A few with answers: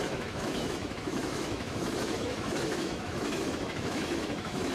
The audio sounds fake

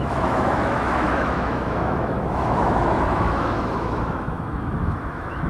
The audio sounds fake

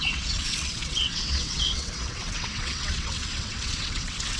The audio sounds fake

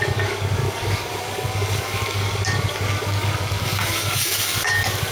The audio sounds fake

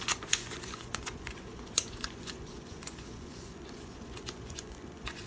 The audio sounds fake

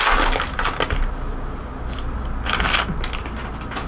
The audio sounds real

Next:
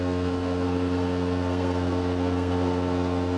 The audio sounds fake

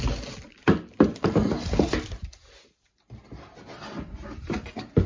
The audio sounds real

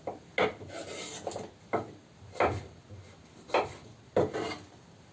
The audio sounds real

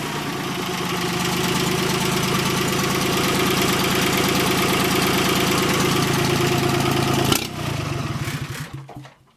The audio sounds real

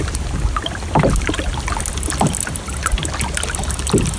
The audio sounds real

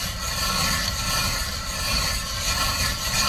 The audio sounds fake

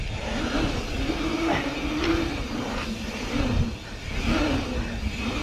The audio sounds real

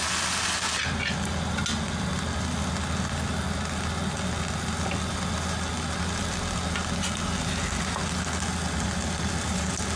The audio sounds real